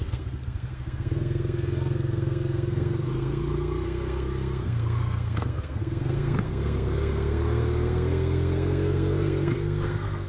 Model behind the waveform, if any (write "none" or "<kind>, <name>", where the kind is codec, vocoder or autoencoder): codec, SNAC